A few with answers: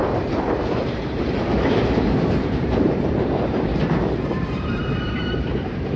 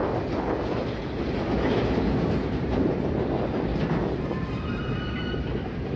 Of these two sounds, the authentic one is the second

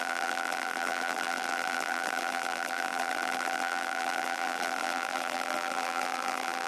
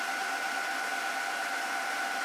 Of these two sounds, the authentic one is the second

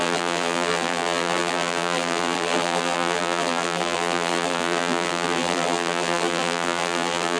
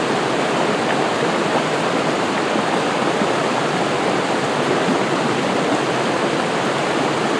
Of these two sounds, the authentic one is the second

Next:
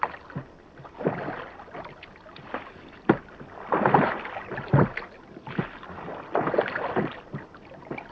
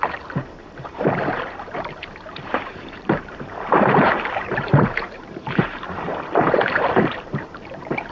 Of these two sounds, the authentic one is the first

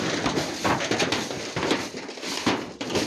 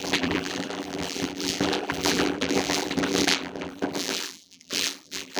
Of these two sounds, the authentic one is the first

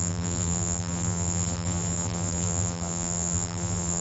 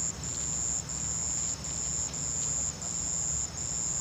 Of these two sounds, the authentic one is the second